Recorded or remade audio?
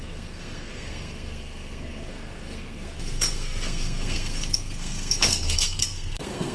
remade